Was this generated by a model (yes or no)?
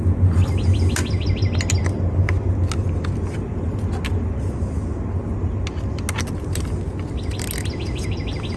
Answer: no